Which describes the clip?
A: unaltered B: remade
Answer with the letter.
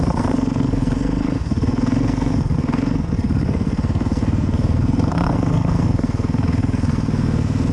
B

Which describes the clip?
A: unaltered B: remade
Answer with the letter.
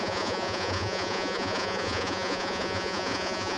B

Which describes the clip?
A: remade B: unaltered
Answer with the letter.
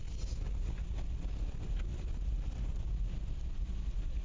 B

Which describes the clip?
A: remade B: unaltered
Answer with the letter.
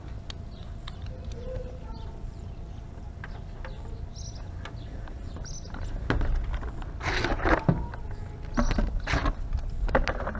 B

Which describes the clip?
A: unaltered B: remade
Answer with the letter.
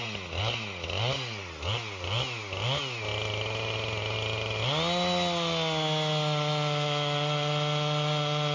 A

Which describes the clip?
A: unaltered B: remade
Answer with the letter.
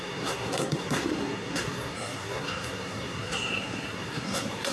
B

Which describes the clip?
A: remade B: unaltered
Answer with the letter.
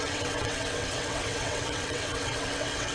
A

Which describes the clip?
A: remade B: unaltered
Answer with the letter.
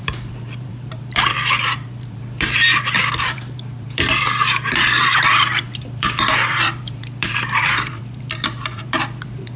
A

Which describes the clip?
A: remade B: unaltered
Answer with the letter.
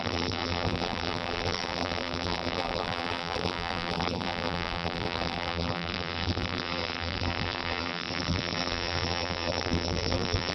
A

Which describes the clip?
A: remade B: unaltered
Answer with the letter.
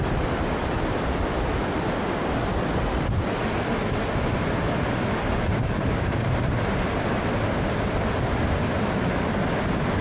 B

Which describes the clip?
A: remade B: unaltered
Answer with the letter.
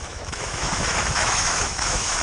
A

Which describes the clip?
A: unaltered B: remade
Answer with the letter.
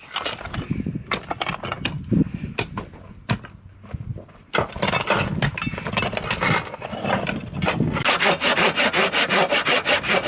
A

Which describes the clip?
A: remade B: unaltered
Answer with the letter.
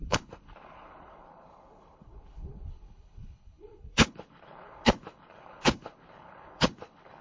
A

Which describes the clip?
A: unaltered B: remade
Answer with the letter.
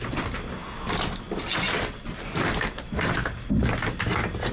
A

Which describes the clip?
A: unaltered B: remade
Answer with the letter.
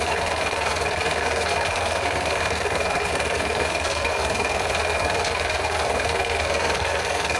B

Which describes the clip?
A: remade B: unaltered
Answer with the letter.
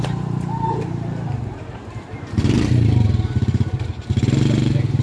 A